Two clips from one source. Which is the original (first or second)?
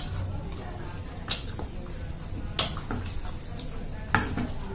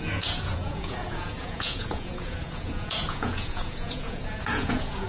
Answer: first